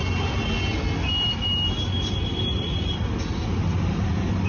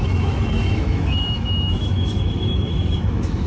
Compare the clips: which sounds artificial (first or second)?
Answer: second